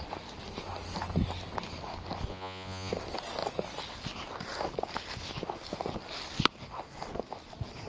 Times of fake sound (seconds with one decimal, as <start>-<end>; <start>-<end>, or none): 2.3-2.9